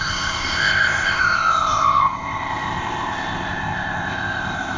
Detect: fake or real fake